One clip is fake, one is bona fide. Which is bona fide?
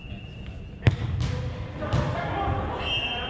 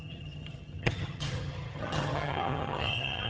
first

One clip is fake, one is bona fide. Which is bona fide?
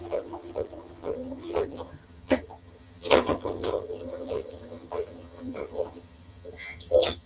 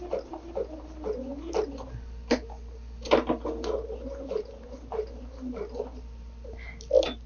second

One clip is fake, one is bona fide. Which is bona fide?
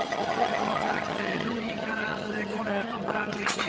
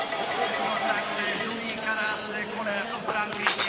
second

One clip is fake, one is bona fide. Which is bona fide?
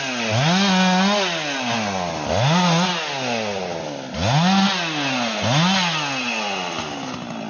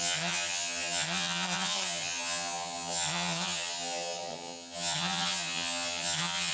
first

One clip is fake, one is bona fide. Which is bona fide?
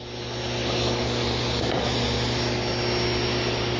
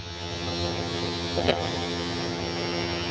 first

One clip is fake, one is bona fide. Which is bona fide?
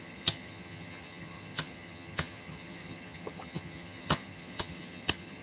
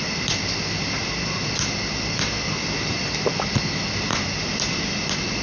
second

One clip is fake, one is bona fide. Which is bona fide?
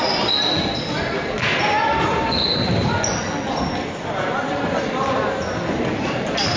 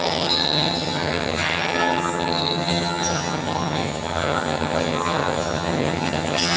first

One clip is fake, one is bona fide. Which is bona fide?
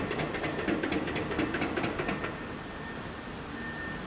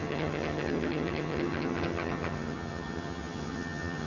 first